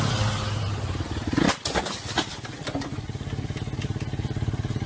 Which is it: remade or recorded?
recorded